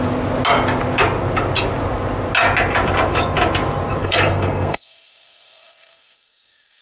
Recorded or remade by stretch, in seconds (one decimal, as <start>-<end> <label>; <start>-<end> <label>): 0.0-4.0 recorded; 4.0-6.8 remade